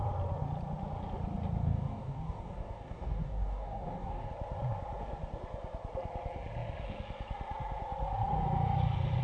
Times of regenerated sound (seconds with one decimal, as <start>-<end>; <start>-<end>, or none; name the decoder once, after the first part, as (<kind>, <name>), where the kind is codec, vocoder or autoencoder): 1.6-4.3 (codec, DAC)